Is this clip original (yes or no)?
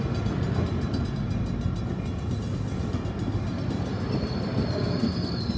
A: yes